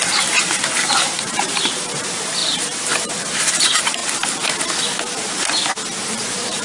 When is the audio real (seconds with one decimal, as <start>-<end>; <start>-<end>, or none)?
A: 4.0-6.0